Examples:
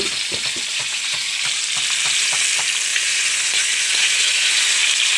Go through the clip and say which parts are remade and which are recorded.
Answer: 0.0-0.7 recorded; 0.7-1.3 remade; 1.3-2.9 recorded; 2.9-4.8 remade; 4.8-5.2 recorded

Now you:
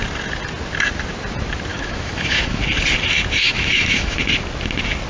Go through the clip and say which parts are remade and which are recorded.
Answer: 0.0-1.7 recorded; 1.7-2.6 remade; 2.6-3.4 recorded; 3.4-4.2 remade; 4.2-5.1 recorded

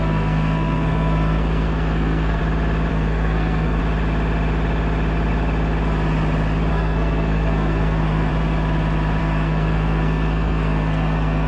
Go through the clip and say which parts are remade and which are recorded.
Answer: 0.0-2.4 remade; 2.4-2.9 recorded; 2.9-3.8 remade; 3.8-6.7 recorded; 6.7-8.3 remade; 8.3-9.2 recorded; 9.2-11.5 remade

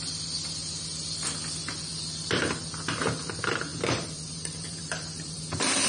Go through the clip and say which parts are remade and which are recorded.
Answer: 0.0-3.7 recorded; 3.7-5.4 remade; 5.4-5.9 recorded

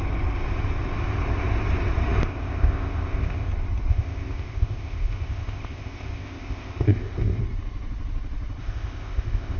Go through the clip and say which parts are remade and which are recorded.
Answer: 0.0-2.3 recorded; 2.3-3.5 remade; 3.5-3.9 recorded; 3.9-7.4 remade; 7.4-8.6 recorded; 8.6-9.6 remade

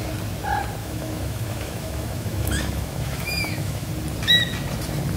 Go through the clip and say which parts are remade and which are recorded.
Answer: 0.0-0.8 recorded; 0.8-3.9 remade; 3.9-5.2 recorded

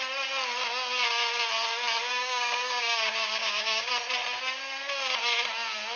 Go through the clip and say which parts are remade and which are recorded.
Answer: 0.0-2.1 recorded; 2.1-3.9 remade; 3.9-6.0 recorded

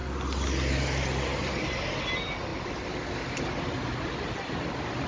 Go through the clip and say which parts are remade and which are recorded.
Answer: 0.0-5.1 recorded